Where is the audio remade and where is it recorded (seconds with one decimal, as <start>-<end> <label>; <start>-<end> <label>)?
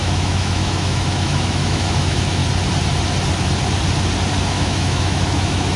0.0-2.4 remade; 2.4-4.4 recorded; 4.4-5.8 remade